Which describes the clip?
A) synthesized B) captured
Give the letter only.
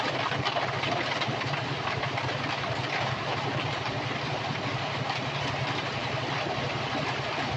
A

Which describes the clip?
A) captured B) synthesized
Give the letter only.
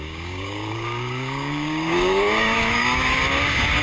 B